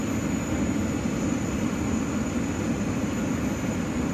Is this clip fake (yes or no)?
no